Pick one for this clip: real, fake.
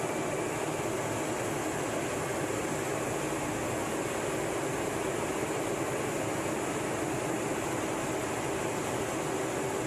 real